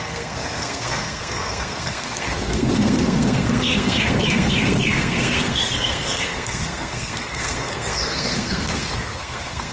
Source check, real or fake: fake